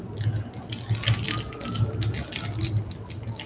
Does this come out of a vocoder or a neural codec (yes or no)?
no